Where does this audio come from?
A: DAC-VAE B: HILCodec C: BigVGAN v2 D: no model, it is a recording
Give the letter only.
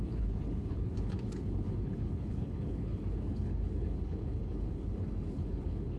B